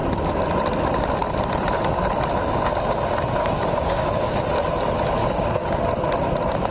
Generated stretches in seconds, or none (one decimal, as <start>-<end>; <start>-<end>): 3.4-4.4; 5.2-5.8